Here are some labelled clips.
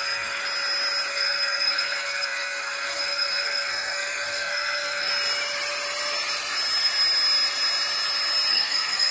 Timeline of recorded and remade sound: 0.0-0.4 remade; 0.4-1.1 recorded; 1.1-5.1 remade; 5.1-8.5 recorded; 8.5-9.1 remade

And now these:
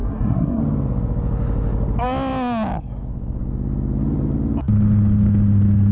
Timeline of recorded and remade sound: 0.0-0.6 remade; 0.6-5.9 recorded

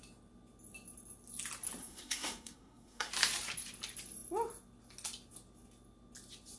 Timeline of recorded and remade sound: 0.0-1.8 recorded; 1.8-3.1 remade; 3.1-6.6 recorded

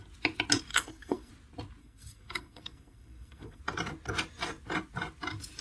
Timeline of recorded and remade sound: 0.0-0.7 recorded; 0.7-1.3 remade; 1.3-1.8 recorded; 1.8-3.6 remade; 3.6-5.6 recorded

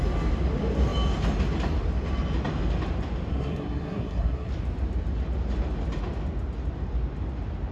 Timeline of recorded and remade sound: 0.0-3.3 recorded; 3.3-4.5 remade; 4.5-7.7 recorded